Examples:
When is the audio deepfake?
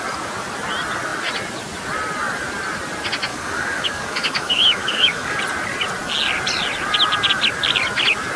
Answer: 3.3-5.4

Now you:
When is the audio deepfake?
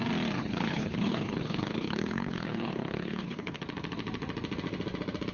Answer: 0.4-3.6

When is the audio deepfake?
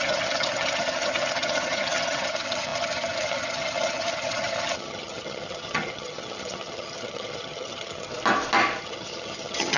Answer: 0.0-8.1; 8.8-9.8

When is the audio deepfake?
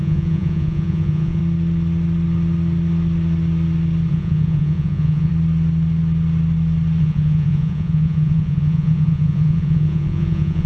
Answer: 0.0-1.4; 4.1-5.3; 7.0-10.7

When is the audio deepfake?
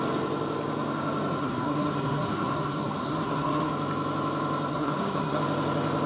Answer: 1.4-3.7; 4.7-5.4